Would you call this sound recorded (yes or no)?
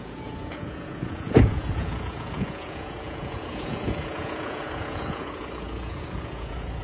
no